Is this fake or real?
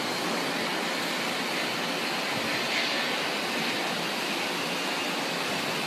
real